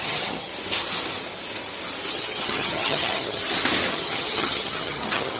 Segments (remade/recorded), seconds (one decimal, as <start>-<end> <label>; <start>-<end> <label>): 0.0-0.5 remade; 0.5-2.1 recorded; 2.1-3.4 remade; 3.4-3.9 recorded; 3.9-5.4 remade